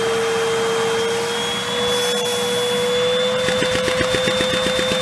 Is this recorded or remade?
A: recorded